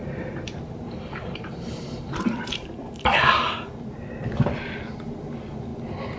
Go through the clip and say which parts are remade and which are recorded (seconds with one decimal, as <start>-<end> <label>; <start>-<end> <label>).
0.0-3.7 remade; 3.7-6.2 recorded